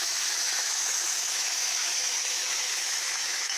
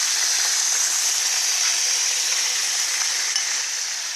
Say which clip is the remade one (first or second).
first